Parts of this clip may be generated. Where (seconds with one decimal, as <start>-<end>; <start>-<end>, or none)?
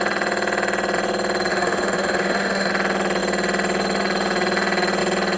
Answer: 1.5-2.7